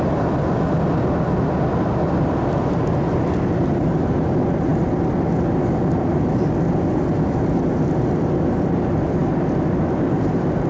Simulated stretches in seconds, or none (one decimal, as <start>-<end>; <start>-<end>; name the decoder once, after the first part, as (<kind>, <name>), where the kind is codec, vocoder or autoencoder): none